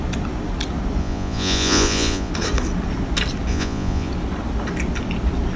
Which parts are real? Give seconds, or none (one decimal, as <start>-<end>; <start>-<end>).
0.0-1.0; 2.3-3.5; 4.1-5.6